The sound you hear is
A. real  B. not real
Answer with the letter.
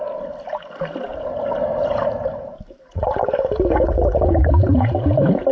A